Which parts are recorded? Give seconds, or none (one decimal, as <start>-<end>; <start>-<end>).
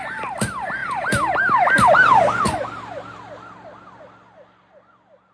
0.0-5.3